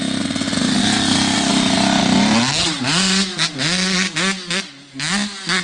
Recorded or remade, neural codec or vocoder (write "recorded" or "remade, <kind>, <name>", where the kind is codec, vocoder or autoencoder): recorded